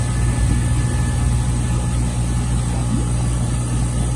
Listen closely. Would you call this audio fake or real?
real